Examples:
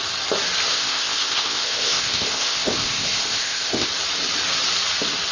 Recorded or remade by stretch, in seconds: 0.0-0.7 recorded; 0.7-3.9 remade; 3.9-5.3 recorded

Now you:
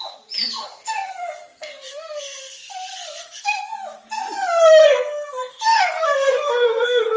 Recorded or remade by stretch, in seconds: 0.0-0.6 recorded; 0.6-3.6 remade; 3.6-4.8 recorded; 4.8-7.2 remade

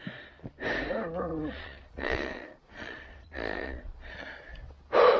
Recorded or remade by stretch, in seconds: 0.0-1.3 recorded; 1.3-4.4 remade; 4.4-5.2 recorded

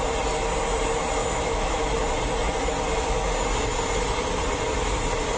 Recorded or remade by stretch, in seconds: 0.0-1.2 recorded; 1.2-1.8 remade; 1.8-5.4 recorded

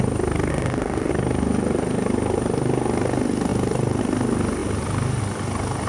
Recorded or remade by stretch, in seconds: 0.0-0.5 recorded; 0.5-1.1 remade; 1.1-5.9 recorded